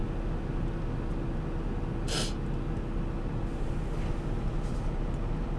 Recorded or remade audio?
recorded